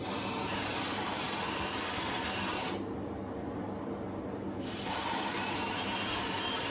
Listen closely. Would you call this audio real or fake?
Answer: fake